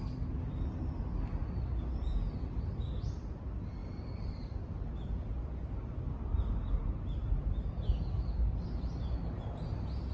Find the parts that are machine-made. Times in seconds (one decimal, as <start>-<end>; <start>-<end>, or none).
3.8-4.9